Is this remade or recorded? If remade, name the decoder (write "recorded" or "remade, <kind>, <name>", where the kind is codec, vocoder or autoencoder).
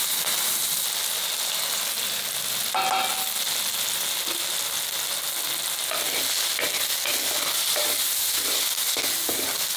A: recorded